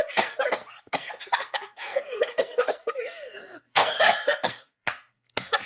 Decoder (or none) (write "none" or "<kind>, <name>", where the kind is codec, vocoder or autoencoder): codec, SNAC